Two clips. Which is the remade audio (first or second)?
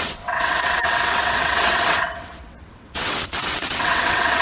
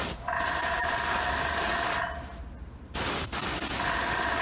first